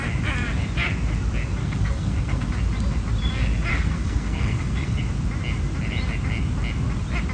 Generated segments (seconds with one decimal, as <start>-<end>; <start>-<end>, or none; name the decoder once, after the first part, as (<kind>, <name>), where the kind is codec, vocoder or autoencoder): 1.6-2.5 (codec, SNAC); 3.7-5.0

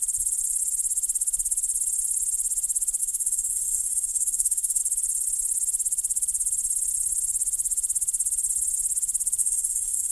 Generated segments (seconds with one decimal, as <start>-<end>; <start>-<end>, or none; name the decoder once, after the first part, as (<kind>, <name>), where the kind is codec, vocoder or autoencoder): 3.0-4.8 (codec, DAC); 9.4-10.1

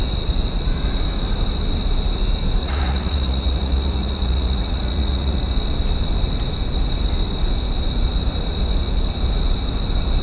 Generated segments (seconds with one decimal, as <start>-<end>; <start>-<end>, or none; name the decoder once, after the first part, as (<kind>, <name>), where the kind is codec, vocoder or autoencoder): 2.6-5.4 (vocoder, Vocos)

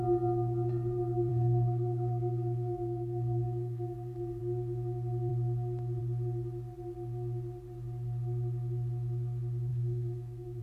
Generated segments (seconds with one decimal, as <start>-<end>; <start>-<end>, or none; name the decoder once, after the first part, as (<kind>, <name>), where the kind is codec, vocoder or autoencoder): 1.3-4.4 (codec, SNAC); 9.7-10.6

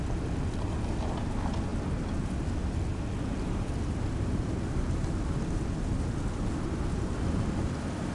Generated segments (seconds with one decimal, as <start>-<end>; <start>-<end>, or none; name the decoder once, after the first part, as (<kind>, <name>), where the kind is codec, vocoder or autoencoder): none